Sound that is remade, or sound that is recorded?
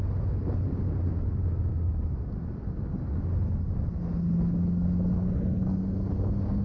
recorded